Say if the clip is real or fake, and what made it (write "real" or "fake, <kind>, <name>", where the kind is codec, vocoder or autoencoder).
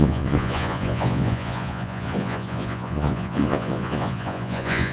fake, vocoder, Vocos